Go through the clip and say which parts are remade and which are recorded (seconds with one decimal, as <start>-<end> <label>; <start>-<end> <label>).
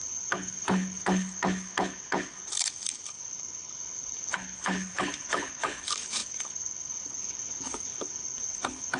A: 0.0-9.0 remade